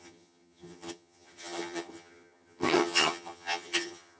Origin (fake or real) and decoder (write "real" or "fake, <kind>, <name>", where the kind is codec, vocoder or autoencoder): fake, vocoder, HiFi-GAN